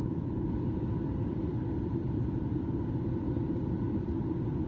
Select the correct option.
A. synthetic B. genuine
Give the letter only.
A